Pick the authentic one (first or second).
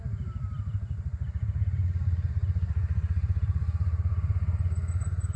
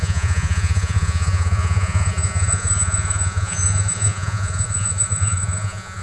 first